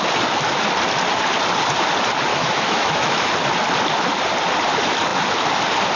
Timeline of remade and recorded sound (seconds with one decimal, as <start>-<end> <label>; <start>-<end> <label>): 0.0-2.3 recorded; 2.3-3.3 remade; 3.3-6.0 recorded